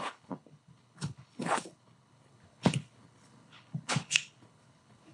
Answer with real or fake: fake